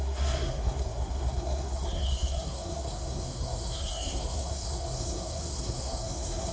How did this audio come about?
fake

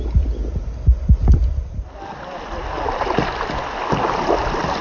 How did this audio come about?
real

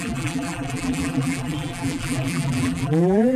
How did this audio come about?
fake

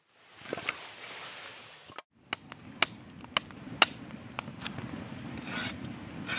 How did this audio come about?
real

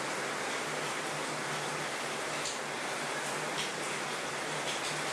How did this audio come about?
real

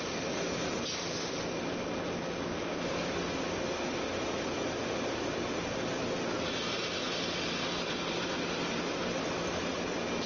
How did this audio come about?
real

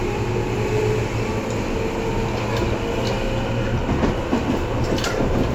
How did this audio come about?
real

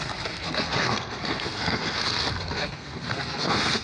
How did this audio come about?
fake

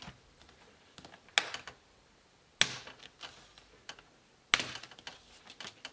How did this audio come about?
real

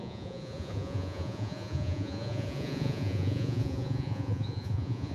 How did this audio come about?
fake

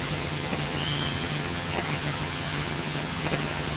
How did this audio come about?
fake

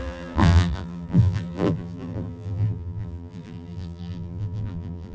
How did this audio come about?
fake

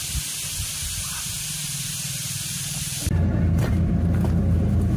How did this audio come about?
real